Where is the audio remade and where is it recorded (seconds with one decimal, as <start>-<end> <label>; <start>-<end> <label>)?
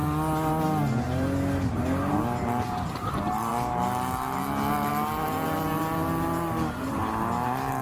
0.0-7.8 recorded